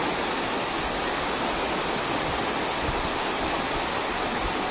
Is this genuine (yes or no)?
yes